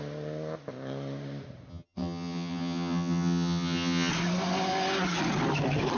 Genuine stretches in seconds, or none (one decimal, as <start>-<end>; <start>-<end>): 0.0-1.7; 4.1-6.0